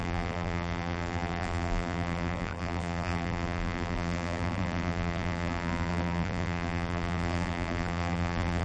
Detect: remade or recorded remade